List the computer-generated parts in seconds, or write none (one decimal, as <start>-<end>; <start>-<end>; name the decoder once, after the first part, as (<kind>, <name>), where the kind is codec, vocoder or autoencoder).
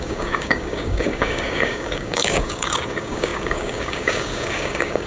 0.0-5.1 (codec, DAC)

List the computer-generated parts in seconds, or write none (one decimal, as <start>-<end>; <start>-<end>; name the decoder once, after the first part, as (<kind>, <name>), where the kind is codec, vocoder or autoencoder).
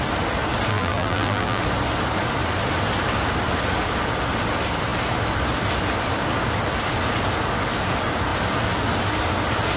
0.7-1.6 (vocoder, BigVGAN v2)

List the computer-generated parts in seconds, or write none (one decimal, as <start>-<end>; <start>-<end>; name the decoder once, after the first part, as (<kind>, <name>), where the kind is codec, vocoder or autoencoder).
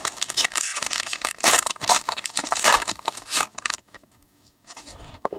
0.0-5.4 (codec, DAC)